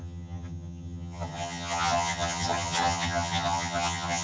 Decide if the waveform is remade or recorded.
remade